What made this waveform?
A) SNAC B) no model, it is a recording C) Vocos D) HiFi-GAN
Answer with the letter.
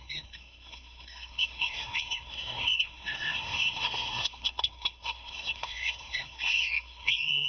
A